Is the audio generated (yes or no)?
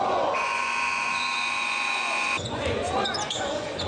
yes